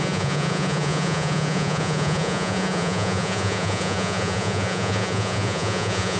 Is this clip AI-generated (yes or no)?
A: yes